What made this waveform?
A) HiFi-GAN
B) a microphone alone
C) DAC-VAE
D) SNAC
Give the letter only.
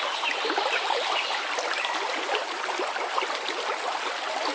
B